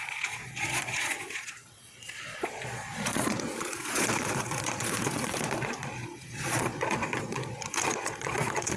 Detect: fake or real fake